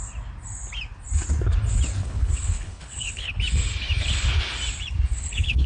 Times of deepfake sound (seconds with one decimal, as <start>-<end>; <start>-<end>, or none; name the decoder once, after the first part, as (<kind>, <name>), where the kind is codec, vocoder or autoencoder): 2.0-3.4 (codec, HILCodec); 5.1-5.7